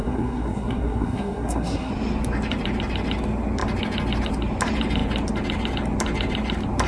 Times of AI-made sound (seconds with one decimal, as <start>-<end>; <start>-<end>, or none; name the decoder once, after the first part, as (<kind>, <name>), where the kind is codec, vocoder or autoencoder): 0.0-1.9 (codec, SNAC)